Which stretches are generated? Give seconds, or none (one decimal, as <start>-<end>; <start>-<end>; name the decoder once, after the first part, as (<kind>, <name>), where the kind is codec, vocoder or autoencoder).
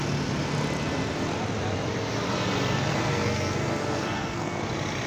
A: 2.9-4.6 (codec, SNAC)